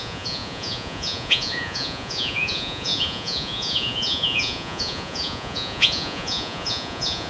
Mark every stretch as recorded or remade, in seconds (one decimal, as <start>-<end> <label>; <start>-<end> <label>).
0.0-7.3 remade